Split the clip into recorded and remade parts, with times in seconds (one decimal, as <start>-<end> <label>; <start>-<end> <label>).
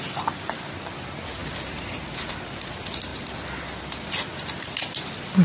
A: 0.0-5.4 recorded